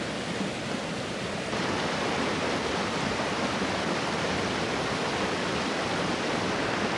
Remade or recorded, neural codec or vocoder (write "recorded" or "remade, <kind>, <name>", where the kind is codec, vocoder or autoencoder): recorded